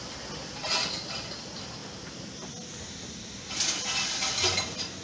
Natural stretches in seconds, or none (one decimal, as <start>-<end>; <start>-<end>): 0.0-5.0